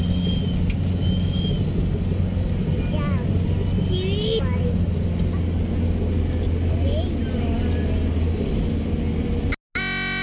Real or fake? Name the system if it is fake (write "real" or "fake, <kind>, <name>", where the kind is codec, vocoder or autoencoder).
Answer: real